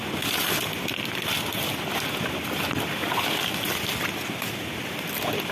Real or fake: real